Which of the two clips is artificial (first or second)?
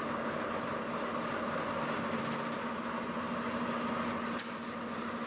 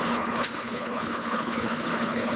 second